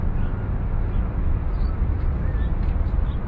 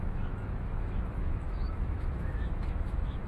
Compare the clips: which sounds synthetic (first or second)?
second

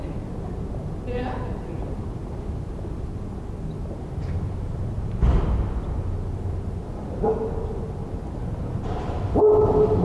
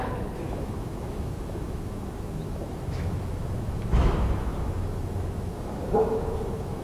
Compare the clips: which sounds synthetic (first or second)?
second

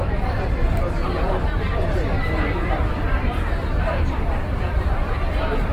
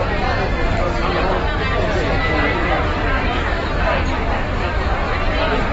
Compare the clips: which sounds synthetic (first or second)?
first